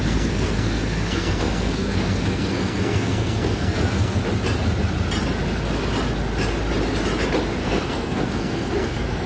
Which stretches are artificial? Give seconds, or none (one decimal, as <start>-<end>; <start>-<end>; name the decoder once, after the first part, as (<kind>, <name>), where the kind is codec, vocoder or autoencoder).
0.0-4.2 (codec, SNAC); 7.6-9.3